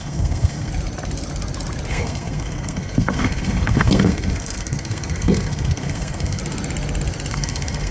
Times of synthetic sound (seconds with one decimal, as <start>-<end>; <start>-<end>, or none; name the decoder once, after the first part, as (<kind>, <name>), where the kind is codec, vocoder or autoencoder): 0.0-0.7 (codec, SNAC); 1.9-6.4; 7.3-7.9